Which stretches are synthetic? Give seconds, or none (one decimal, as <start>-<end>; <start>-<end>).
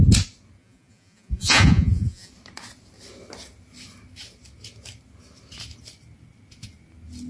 0.6-2.3